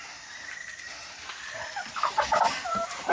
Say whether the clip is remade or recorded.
recorded